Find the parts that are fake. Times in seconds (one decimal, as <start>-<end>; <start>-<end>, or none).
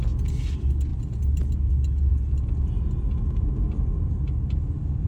none